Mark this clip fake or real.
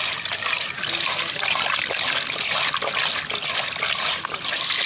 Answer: real